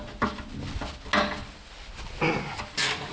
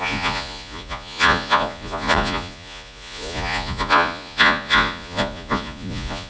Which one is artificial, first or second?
second